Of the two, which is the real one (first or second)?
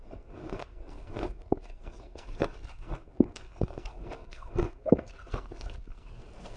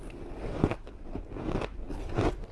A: second